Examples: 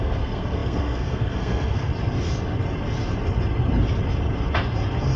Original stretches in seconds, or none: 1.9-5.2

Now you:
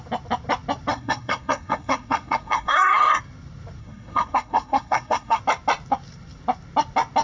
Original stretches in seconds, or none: 0.0-0.9; 3.2-3.8; 5.4-7.2